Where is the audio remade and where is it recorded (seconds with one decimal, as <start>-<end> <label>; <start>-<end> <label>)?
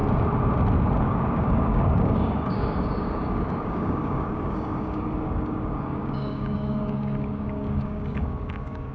0.0-1.0 recorded; 1.0-8.9 remade